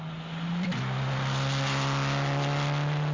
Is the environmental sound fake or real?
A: real